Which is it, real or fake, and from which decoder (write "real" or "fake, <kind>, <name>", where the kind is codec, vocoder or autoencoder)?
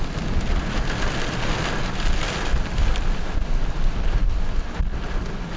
real